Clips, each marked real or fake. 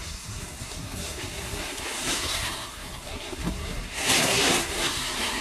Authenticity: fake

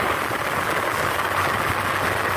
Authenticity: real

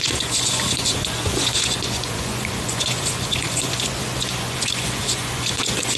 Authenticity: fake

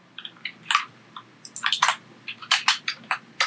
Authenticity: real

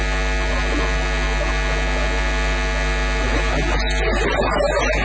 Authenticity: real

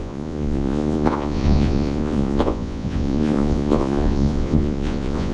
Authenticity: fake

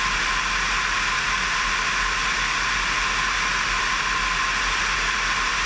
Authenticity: real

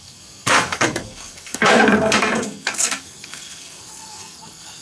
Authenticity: fake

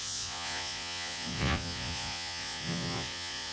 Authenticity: fake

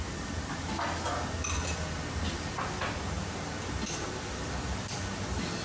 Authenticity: real